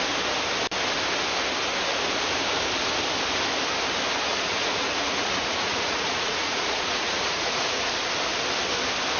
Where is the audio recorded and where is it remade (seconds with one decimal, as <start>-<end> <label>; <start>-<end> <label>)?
0.0-4.3 recorded; 4.3-7.9 remade; 7.9-9.2 recorded